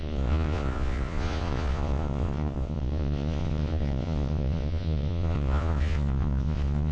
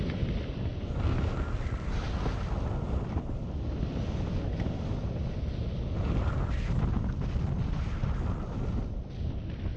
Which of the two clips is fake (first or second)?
first